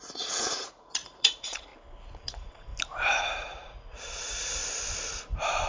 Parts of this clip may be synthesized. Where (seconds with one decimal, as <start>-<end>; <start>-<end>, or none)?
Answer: 0.0-1.7; 2.3-2.7; 3.2-4.6